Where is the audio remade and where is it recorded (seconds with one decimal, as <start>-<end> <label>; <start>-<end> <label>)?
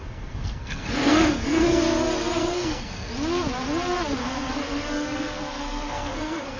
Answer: 0.0-1.8 remade; 1.8-2.4 recorded; 2.4-3.1 remade; 3.1-4.2 recorded; 4.2-6.6 remade